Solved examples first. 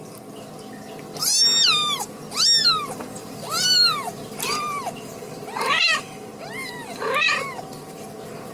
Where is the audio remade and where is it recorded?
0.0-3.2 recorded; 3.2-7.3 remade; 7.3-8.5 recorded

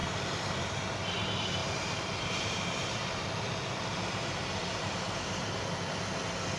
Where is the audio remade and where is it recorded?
0.0-1.6 recorded; 1.6-3.3 remade; 3.3-3.9 recorded; 3.9-5.4 remade; 5.4-6.6 recorded

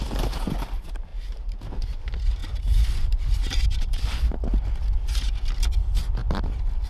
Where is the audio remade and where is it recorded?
0.0-1.1 recorded; 1.1-1.6 remade; 1.6-2.4 recorded; 2.4-4.3 remade; 4.3-6.9 recorded